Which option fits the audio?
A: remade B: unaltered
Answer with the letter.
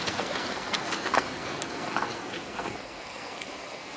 A